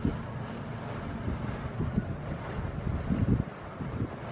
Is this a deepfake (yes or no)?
no